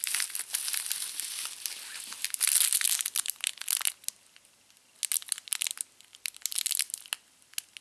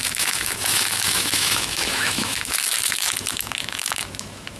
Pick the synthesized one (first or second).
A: second